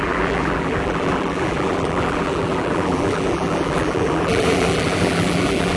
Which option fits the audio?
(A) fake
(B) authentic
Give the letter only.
A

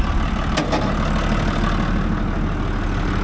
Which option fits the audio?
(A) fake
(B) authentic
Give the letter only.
B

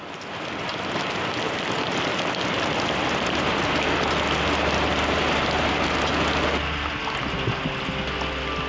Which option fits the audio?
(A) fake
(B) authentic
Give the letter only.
B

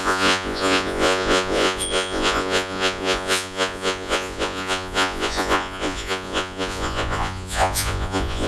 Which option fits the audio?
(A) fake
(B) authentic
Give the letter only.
A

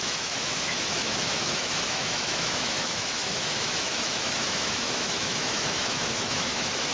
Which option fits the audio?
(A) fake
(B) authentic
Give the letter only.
A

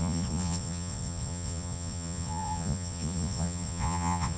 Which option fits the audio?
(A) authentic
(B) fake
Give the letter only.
B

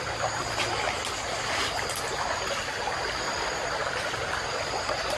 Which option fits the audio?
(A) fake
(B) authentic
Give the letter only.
B